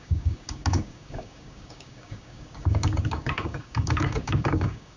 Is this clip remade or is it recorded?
remade